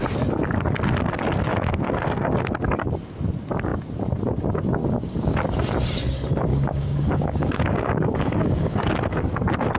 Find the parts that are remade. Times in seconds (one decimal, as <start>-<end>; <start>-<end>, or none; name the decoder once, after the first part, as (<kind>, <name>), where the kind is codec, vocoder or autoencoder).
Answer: 1.5-2.3 (codec, DAC); 4.8-5.4; 6.5-8.9